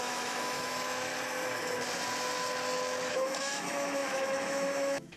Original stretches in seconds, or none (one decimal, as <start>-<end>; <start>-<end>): 1.1-3.1